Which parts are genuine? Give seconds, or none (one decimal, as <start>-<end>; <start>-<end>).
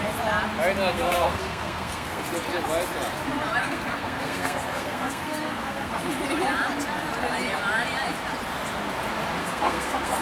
0.0-0.9; 2.2-3.6; 6.1-9.4